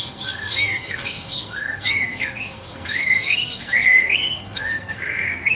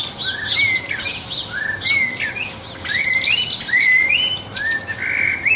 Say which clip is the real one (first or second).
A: second